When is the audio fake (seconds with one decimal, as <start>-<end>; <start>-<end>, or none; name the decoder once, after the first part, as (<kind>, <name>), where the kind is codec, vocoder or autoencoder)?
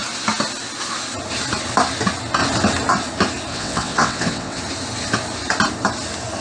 3.5-4.6 (vocoder, WaveNeXt)